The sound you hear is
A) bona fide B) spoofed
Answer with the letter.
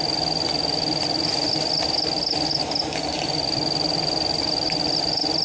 A